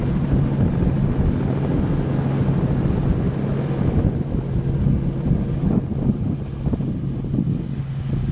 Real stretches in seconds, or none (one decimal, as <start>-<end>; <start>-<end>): 0.0-8.3